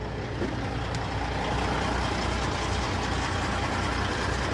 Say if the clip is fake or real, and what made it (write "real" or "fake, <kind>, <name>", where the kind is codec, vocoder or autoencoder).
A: real